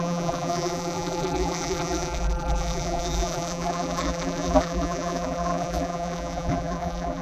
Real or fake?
fake